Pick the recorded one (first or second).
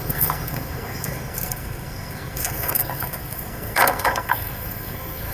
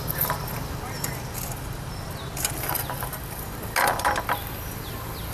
second